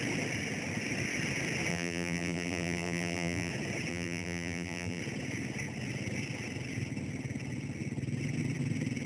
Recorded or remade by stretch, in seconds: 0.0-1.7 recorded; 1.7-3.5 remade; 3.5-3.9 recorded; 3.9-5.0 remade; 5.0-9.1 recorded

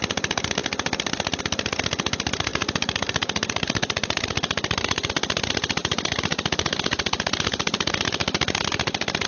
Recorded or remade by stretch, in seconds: 0.0-2.5 recorded; 2.5-5.1 remade; 5.1-5.8 recorded; 5.8-8.6 remade; 8.6-9.3 recorded